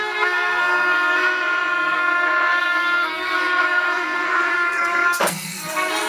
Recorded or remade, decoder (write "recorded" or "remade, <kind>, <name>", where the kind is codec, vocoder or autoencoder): remade, codec, SNAC